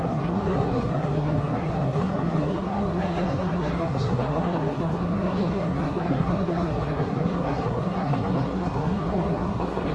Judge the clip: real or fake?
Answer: fake